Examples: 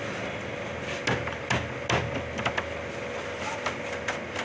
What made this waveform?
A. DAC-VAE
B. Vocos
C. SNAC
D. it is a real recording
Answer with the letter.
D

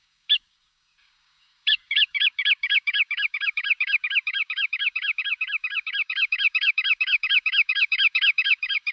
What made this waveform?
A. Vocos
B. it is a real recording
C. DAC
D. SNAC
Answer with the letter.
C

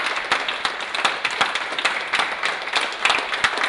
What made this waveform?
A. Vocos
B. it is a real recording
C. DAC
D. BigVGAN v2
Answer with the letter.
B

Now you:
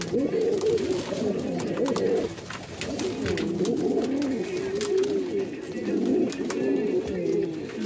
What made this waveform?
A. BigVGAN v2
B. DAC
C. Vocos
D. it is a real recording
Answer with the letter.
D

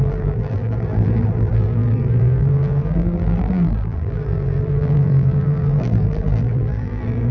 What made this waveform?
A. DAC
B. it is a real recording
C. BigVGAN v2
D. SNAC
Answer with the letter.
C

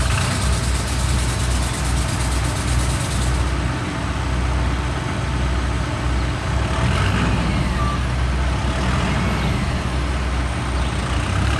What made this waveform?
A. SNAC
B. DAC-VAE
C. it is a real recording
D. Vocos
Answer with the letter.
C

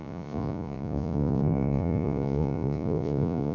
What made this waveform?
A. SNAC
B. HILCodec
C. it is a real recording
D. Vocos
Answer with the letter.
D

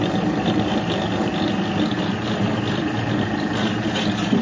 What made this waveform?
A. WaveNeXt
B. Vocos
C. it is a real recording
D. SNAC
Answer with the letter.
C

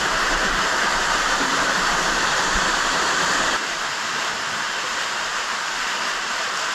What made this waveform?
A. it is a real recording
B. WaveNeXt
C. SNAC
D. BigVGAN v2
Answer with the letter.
D